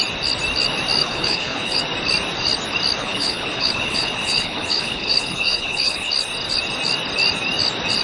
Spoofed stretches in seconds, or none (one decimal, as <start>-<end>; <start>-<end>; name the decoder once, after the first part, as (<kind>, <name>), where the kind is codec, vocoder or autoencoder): 1.0-1.8 (codec, HILCodec); 3.0-6.1